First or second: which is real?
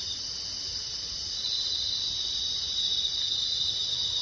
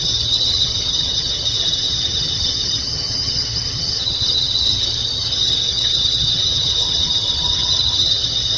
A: first